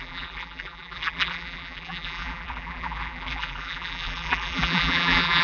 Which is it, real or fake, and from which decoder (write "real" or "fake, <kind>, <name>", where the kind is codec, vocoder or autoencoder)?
fake, vocoder, BigVGAN v2